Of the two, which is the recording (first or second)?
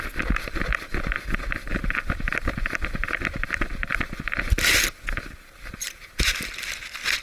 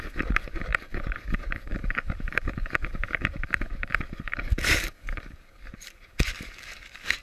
first